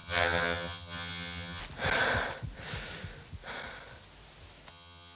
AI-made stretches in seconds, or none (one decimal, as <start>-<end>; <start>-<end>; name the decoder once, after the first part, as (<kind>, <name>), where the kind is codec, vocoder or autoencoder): 0.0-1.6 (vocoder, HiFi-GAN); 4.7-5.2